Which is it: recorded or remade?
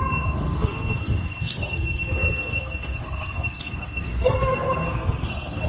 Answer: remade